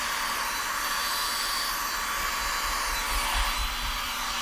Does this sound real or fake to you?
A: fake